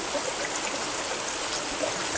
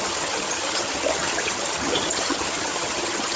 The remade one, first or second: second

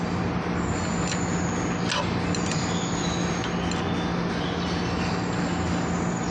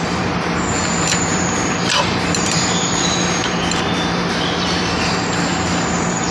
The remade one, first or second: second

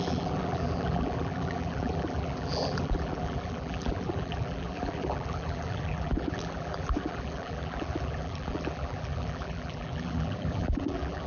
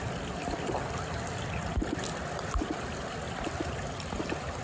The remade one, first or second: first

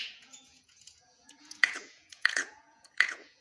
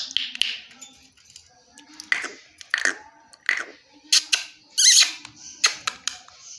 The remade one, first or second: first